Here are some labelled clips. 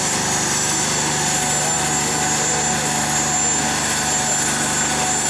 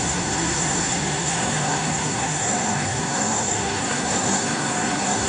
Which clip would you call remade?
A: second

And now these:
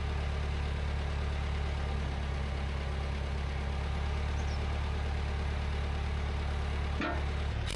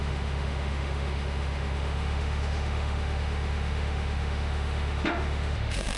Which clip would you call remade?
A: second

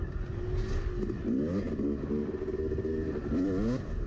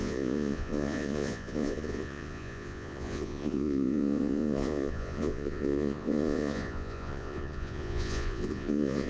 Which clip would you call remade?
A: second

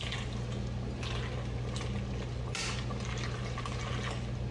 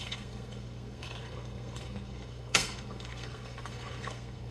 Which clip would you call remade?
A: second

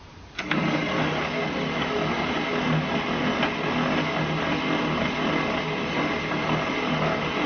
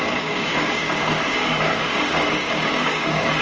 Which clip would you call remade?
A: second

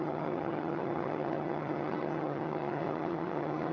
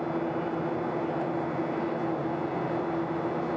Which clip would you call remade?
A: first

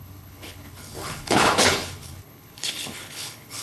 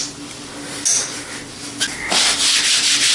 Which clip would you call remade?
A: first